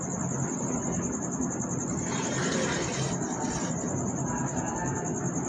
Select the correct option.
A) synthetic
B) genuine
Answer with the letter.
B